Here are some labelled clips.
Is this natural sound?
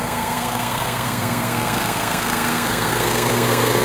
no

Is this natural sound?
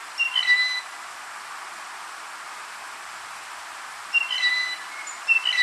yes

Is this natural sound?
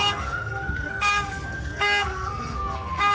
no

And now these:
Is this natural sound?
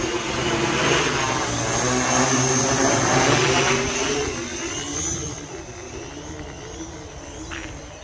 yes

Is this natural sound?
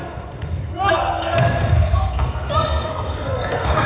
no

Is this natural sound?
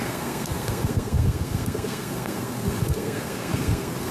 no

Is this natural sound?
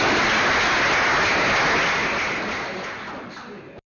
yes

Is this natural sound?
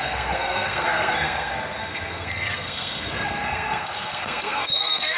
no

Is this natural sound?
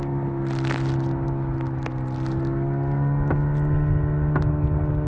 yes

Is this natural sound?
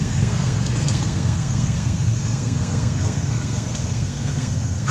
no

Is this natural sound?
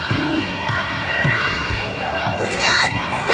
no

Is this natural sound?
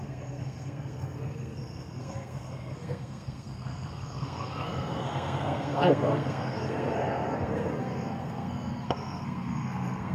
no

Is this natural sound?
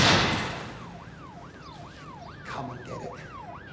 yes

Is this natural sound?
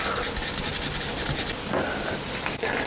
yes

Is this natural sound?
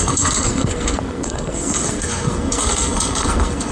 no